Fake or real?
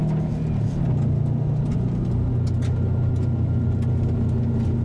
real